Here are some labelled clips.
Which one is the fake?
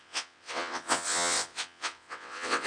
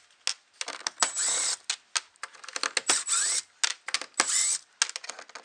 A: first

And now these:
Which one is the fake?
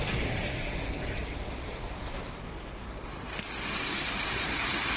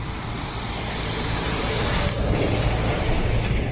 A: first